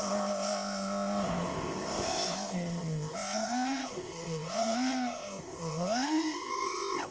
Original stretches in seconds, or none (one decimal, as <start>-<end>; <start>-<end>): none